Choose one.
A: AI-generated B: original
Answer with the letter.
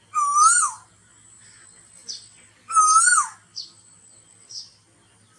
B